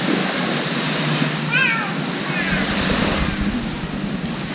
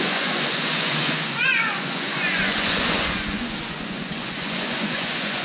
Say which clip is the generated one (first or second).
second